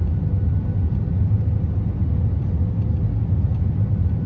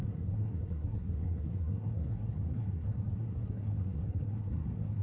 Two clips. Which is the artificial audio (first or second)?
second